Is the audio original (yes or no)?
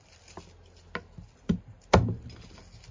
yes